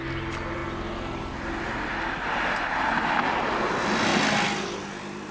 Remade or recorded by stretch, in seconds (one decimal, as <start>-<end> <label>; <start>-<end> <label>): 0.0-5.3 recorded